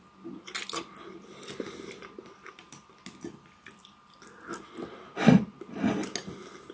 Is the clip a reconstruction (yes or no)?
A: no